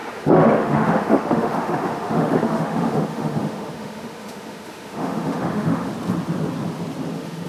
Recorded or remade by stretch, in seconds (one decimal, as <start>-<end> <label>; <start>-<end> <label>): 0.0-5.9 remade; 5.9-7.1 recorded; 7.1-7.5 remade